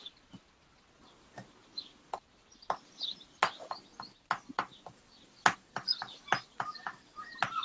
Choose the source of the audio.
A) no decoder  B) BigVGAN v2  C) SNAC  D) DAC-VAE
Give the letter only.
A